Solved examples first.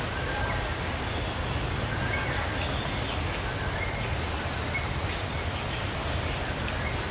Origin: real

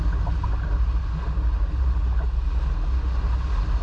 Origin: real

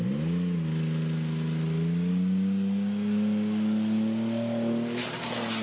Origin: real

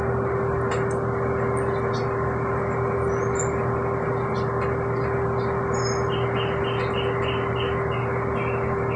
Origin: real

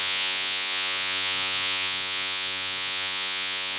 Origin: fake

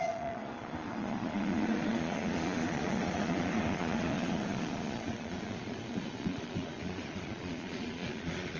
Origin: fake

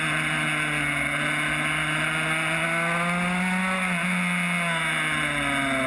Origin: real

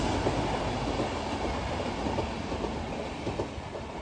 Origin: real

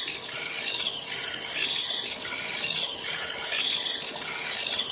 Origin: real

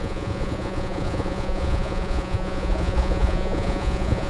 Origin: fake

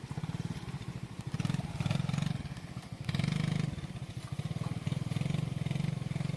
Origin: real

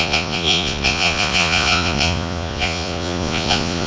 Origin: fake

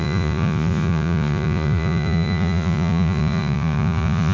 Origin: fake